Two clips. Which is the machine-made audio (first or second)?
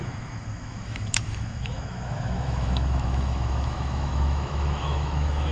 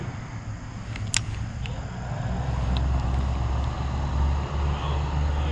first